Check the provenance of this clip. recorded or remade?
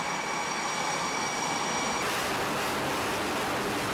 recorded